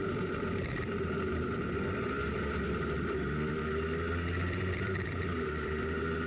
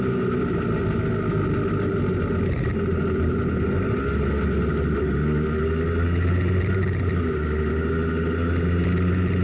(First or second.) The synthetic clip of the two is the first